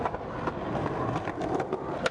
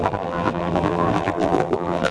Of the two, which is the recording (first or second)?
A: first